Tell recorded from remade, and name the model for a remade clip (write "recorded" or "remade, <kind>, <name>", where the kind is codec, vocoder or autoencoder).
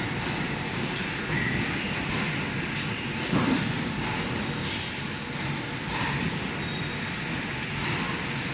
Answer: recorded